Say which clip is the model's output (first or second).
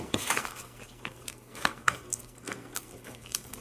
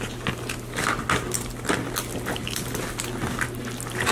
first